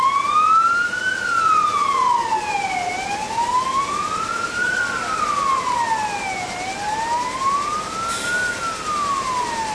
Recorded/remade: recorded